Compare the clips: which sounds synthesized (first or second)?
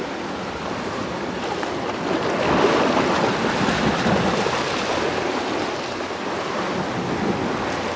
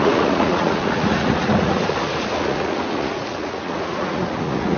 second